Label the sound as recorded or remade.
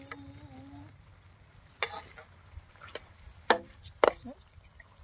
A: recorded